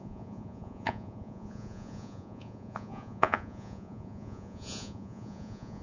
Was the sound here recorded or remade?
remade